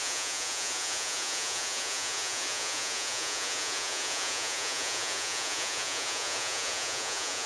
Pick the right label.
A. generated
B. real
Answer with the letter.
A